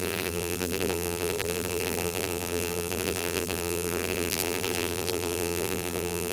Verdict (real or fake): fake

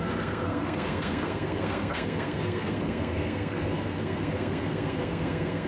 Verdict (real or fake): fake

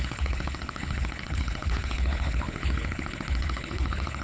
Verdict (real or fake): fake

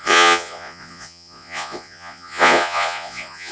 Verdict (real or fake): fake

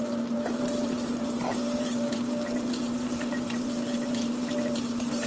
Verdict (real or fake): fake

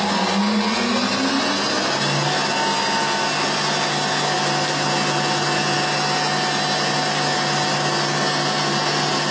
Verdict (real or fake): real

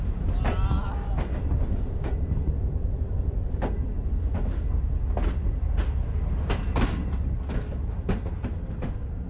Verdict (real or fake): real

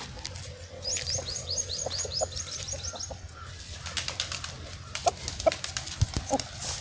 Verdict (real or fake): real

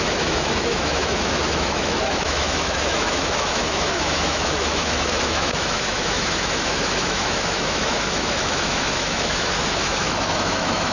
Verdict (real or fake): fake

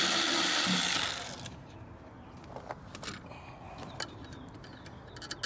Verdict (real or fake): real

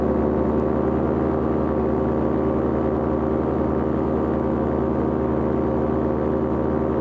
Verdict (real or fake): real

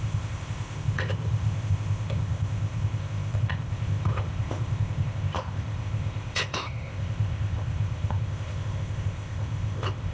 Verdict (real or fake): fake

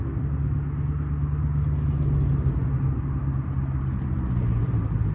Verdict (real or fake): real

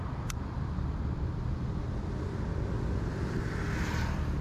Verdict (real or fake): real